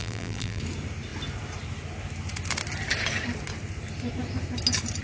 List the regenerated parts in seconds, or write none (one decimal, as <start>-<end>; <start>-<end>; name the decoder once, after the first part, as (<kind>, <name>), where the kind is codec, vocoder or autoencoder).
0.0-0.6 (vocoder, BigVGAN v2)